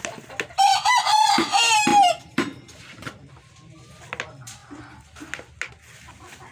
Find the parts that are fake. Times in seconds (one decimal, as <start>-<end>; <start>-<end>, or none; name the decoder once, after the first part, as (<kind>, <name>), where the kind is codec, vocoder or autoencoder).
1.9-2.9 (vocoder, BigVGAN v2)

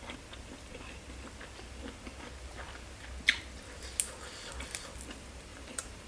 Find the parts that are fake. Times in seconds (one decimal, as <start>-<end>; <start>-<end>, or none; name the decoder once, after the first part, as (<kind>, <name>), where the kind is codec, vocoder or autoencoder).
5.5-6.1 (vocoder, BigVGAN v2)